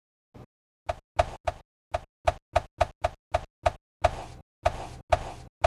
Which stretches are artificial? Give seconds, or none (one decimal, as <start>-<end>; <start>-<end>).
none